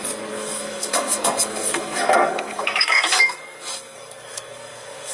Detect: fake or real fake